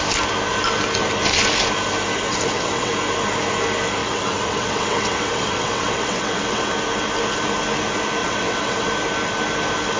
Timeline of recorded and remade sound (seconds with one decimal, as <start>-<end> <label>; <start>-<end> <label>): 0.0-2.3 recorded; 2.3-2.9 remade; 2.9-4.0 recorded; 4.0-6.7 remade; 6.7-8.2 recorded; 8.2-8.9 remade; 8.9-10.0 recorded